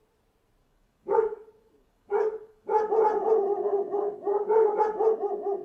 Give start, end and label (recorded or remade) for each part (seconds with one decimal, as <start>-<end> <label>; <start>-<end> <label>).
0.0-0.6 recorded; 0.6-2.9 remade; 2.9-3.5 recorded; 3.5-4.8 remade; 4.8-5.6 recorded